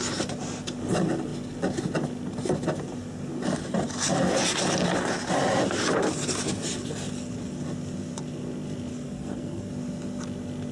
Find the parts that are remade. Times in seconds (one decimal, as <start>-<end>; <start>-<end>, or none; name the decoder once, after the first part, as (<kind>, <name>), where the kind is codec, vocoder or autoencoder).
8.9-9.7 (codec, SNAC)